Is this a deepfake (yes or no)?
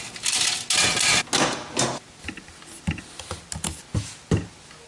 no